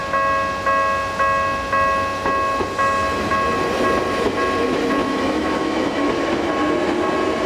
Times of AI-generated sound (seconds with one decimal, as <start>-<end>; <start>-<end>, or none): 5.0-6.1

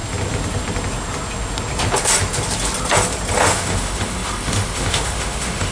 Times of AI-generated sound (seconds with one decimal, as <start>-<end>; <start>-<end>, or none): 3.4-5.7

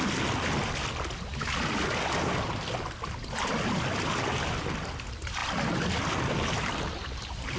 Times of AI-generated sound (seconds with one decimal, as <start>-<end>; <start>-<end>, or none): none

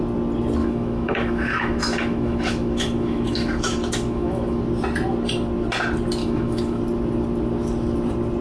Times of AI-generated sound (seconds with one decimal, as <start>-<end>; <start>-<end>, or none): 0.6-4.6; 6.2-6.8

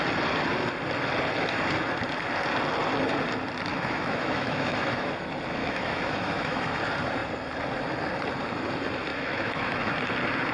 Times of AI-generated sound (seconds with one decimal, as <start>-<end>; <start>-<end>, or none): 3.7-5.1; 5.6-6.8; 9.1-9.9

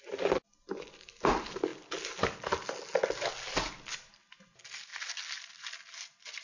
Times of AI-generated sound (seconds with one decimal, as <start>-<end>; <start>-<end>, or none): none

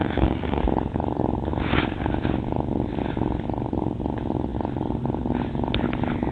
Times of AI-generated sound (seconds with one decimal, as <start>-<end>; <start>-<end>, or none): 0.0-0.6

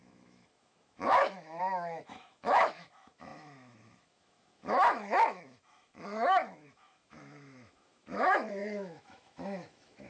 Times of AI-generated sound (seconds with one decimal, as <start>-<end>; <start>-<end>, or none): 0.0-10.1